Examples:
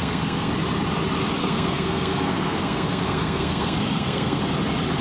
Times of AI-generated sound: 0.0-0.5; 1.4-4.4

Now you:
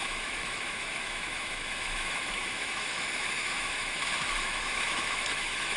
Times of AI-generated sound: 0.0-5.8

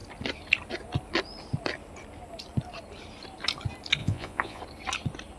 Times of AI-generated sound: 4.0-4.6

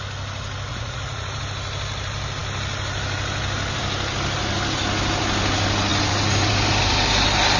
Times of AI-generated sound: 0.7-1.4

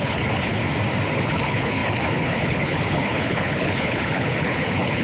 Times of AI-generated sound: 0.0-0.6; 1.1-5.0